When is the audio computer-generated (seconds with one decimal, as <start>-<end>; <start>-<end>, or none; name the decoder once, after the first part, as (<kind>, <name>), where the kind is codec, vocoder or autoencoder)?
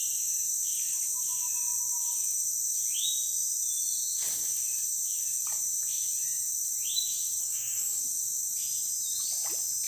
7.4-8.0 (codec, DAC)